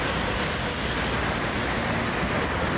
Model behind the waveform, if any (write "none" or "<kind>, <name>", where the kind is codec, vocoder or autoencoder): none